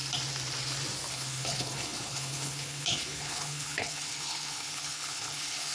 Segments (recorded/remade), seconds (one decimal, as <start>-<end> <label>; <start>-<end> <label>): 0.0-1.1 recorded; 1.1-5.7 remade